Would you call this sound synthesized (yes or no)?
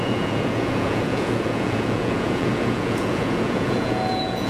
yes